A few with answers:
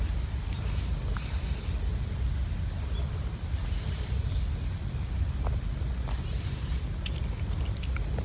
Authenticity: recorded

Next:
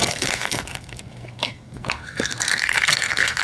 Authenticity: remade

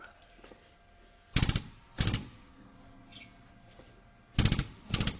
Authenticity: recorded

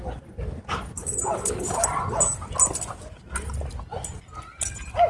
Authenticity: recorded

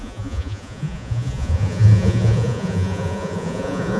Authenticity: remade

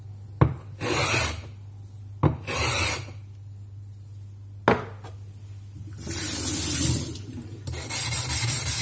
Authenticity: recorded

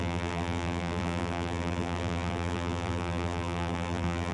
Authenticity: remade